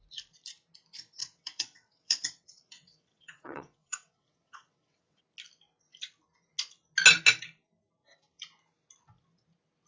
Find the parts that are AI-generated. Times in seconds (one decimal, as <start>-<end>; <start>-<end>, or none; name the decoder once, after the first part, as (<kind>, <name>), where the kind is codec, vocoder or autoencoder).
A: 1.2-5.2 (vocoder, WaveNeXt)